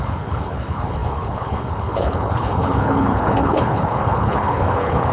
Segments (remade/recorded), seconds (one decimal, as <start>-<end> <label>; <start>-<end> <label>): 0.0-5.1 remade